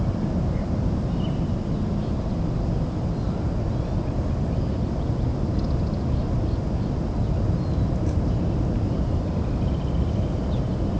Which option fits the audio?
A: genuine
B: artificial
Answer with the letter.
A